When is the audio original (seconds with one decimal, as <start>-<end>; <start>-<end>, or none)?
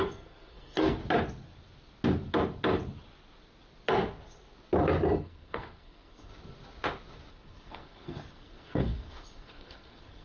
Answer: 1.0-5.2; 6.3-7.3